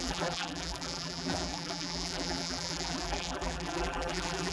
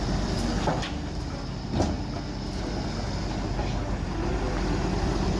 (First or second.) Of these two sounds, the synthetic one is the first